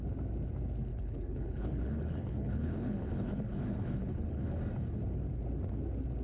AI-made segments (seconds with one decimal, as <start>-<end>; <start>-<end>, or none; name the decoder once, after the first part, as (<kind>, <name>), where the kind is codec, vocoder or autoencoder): 0.9-4.6 (codec, HILCodec)